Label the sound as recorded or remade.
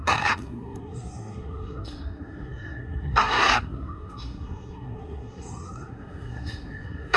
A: remade